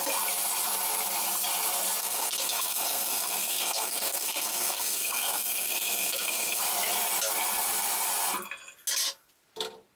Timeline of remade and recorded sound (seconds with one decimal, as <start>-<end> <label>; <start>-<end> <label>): 0.0-2.0 recorded; 2.0-6.6 remade; 6.6-10.0 recorded